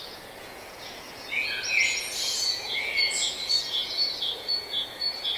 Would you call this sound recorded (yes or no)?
no